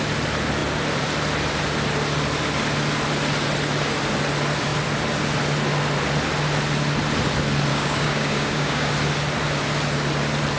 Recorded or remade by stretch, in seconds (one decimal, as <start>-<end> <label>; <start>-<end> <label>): 0.0-7.7 recorded; 7.7-8.9 remade; 8.9-10.6 recorded